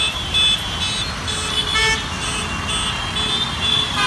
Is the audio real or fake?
real